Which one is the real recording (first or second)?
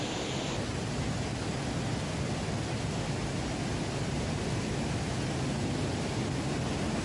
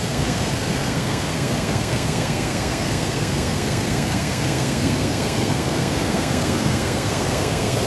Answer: first